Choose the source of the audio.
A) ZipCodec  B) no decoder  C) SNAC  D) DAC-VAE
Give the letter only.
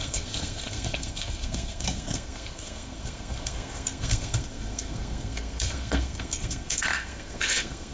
C